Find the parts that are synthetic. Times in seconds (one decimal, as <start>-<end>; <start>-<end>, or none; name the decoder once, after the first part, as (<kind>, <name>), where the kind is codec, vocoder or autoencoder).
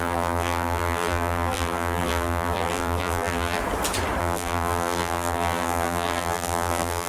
0.0-3.6 (vocoder, BigVGAN v2); 4.2-7.1